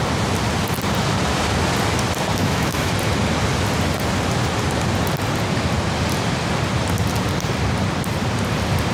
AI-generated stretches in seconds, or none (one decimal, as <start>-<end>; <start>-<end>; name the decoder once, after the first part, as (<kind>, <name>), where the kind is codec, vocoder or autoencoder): 2.4-2.9 (autoencoder, DAC-VAE)